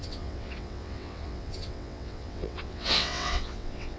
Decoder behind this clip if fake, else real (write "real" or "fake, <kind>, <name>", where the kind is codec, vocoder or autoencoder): fake, vocoder, WaveNeXt